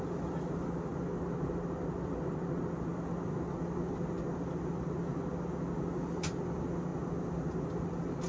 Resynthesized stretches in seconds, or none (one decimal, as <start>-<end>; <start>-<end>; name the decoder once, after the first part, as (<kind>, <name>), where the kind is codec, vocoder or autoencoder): none